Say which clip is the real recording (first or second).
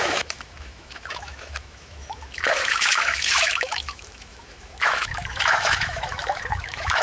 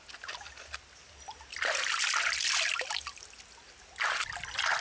second